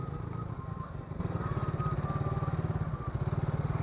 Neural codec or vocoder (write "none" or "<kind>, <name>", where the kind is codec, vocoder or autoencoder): none